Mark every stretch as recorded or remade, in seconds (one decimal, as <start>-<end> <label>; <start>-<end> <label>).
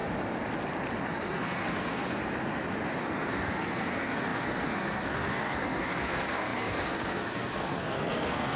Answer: 0.0-1.0 recorded; 1.0-2.2 remade; 2.2-3.0 recorded; 3.0-8.6 remade